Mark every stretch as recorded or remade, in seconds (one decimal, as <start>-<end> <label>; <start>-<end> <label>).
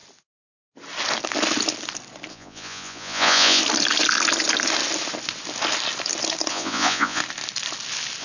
0.0-2.3 recorded; 2.3-3.6 remade; 3.6-6.5 recorded; 6.5-7.2 remade; 7.2-8.2 recorded